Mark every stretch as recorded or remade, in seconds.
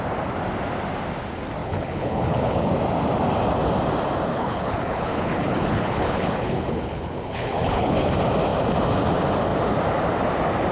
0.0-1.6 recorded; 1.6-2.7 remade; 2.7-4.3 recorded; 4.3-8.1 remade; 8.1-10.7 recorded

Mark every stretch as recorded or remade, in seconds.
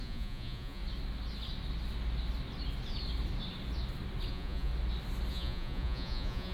0.0-0.8 remade; 0.8-4.3 recorded; 4.3-4.7 remade; 4.7-5.3 recorded; 5.3-6.5 remade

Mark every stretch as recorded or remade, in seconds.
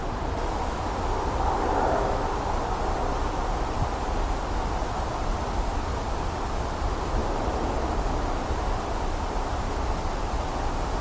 0.0-11.0 recorded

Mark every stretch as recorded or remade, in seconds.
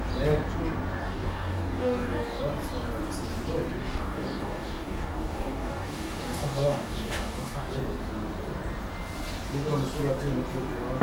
0.0-1.0 recorded; 1.0-2.4 remade; 2.4-3.8 recorded; 3.8-7.7 remade; 7.7-11.0 recorded